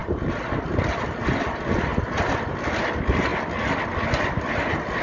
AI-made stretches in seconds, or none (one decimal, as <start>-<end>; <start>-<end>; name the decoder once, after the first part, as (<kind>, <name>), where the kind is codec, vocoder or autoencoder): none